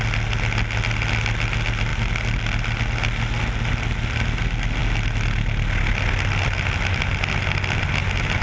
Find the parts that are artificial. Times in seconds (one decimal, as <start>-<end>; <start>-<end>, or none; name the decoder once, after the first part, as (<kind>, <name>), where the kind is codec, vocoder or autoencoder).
none